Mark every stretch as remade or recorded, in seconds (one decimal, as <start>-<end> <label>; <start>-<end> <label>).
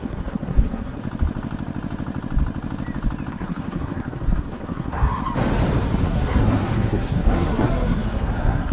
0.0-1.0 remade; 1.0-3.3 recorded; 3.3-5.2 remade; 5.2-6.0 recorded; 6.0-8.7 remade